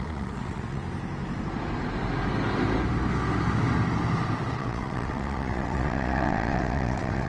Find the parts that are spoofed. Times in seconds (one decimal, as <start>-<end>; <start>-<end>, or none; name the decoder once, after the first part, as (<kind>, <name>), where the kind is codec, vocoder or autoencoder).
0.0-0.8 (vocoder, WaveNeXt); 4.5-7.3